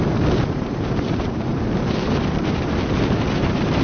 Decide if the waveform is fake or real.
fake